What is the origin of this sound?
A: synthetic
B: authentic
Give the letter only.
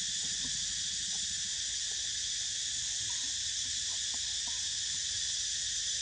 B